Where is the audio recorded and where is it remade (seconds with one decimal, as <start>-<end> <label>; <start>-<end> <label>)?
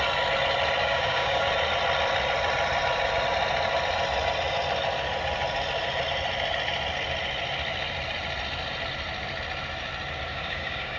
0.0-0.8 recorded; 0.8-1.5 remade; 1.5-10.3 recorded; 10.3-11.0 remade